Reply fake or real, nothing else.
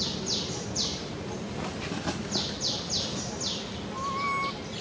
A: real